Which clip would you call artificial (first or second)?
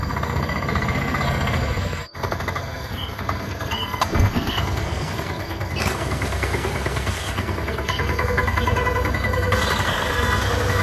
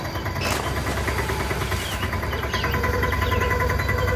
first